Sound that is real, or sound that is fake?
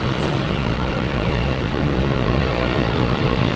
fake